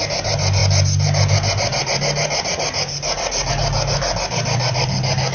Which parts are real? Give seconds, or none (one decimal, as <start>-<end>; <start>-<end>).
0.0-5.3